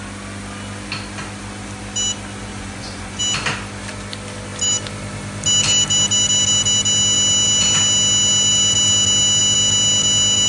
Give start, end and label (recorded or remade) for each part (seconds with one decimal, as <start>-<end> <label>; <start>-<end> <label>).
0.0-2.5 recorded; 2.5-3.2 remade; 3.2-10.5 recorded